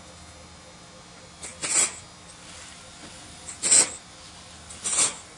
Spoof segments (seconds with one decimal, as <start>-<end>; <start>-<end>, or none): none

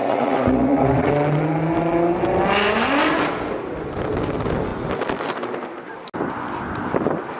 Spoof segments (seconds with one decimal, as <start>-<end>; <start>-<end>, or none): 0.0-1.1

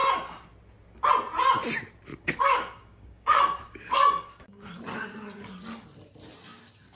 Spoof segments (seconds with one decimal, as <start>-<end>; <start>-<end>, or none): 2.1-4.8

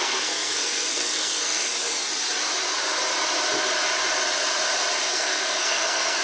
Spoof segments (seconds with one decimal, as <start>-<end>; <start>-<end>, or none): 0.0-1.7; 5.1-6.2

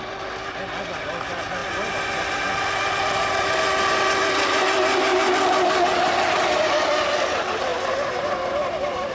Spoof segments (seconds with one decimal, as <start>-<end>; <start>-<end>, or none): none

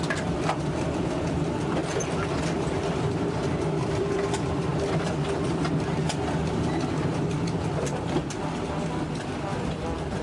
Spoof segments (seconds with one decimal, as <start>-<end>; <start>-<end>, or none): 0.0-1.8; 3.0-4.7; 9.4-10.2

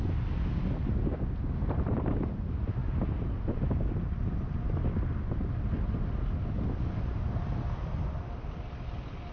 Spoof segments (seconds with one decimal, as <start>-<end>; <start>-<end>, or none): none

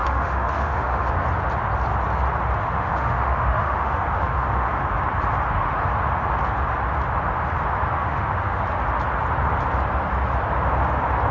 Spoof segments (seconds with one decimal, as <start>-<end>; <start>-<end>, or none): 0.0-1.1; 2.6-4.7; 8.0-8.6